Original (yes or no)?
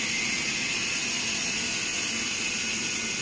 yes